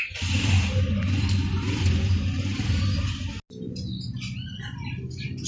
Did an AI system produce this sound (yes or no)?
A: no